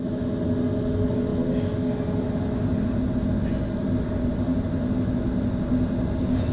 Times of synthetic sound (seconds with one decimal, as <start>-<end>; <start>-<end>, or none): none